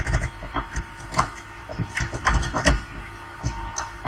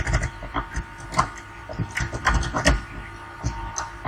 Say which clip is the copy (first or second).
first